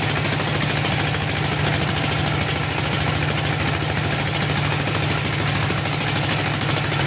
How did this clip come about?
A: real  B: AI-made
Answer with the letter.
A